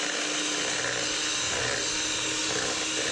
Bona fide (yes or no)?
yes